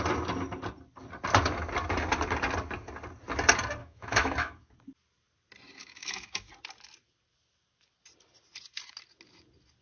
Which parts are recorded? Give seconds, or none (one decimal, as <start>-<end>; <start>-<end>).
0.0-3.8; 4.7-5.8; 6.5-9.8